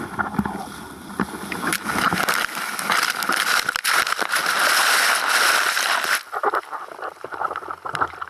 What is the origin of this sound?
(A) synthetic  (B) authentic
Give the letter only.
B